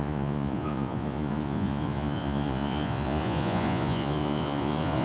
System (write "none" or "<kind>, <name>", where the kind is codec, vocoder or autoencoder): vocoder, Vocos